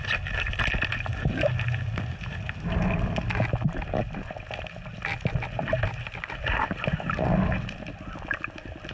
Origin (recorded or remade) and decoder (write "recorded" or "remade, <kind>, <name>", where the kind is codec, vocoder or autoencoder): recorded